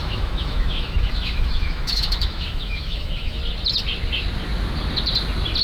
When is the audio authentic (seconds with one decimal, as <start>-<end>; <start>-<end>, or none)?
3.4-5.6